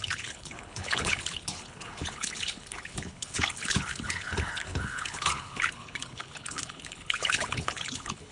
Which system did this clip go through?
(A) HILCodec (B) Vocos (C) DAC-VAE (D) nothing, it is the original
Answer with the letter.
A